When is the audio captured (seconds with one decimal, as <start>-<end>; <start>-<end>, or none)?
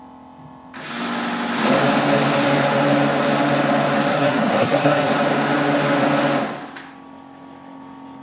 0.0-4.1; 5.1-8.2